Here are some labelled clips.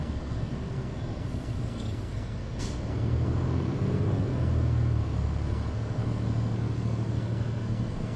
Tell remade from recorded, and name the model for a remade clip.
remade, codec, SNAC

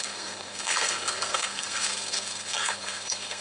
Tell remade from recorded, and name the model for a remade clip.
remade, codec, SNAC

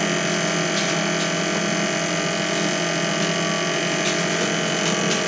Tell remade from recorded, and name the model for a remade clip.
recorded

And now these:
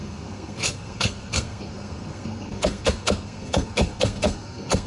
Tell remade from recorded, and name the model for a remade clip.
remade, codec, SNAC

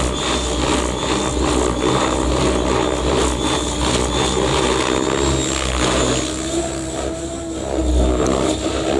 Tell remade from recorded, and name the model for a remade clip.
recorded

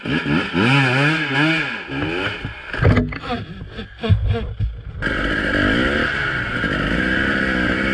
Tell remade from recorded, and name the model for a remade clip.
recorded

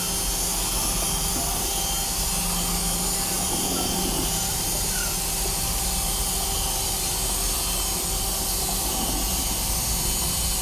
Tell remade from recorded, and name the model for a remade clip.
recorded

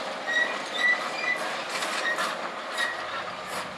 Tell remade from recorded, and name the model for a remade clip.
recorded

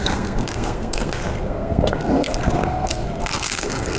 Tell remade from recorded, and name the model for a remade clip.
remade, codec, SNAC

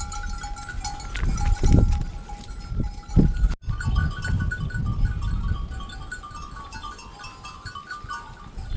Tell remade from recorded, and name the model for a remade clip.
recorded